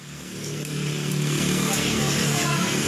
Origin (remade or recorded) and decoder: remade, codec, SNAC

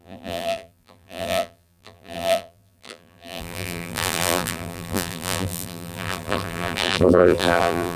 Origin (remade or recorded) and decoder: remade, vocoder, BigVGAN v2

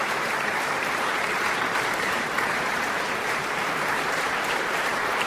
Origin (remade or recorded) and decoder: remade, vocoder, BigVGAN v2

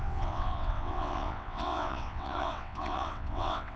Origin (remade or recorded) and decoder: remade, vocoder, WaveNeXt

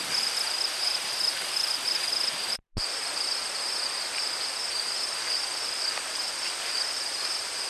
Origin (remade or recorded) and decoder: recorded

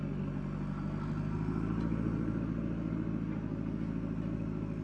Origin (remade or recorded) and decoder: recorded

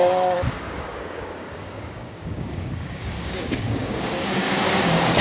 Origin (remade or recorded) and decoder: remade, codec, DAC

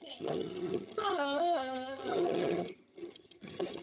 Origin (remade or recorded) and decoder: remade, vocoder, HiFi-GAN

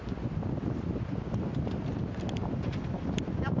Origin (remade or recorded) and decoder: recorded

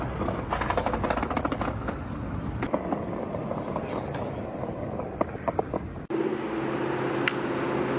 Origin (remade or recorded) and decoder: recorded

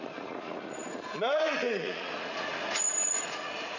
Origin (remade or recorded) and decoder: remade, vocoder, Vocos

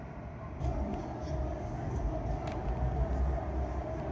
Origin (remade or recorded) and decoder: recorded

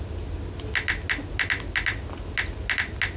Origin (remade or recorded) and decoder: recorded